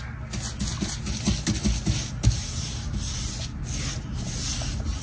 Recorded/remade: recorded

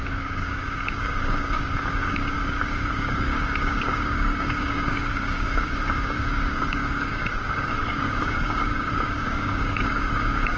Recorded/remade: remade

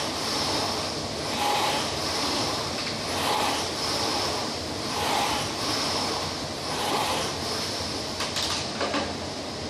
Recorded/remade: remade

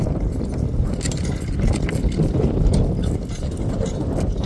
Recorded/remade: recorded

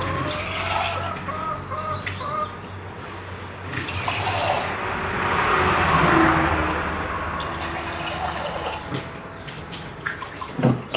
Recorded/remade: recorded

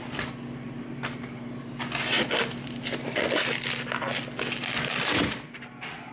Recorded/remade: recorded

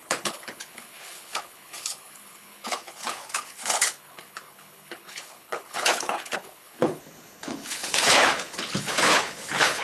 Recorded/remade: remade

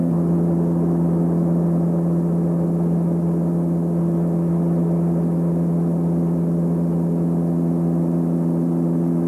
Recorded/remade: recorded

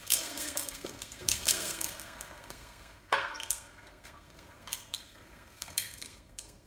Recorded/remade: remade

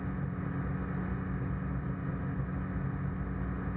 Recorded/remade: recorded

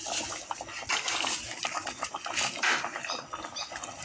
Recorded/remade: recorded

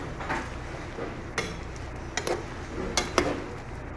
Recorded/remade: recorded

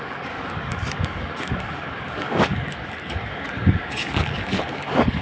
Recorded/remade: remade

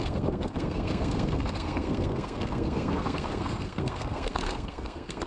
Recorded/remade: remade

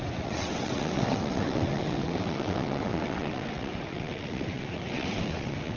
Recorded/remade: remade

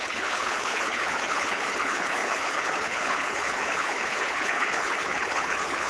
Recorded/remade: remade